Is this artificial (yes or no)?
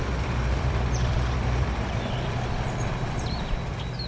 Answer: yes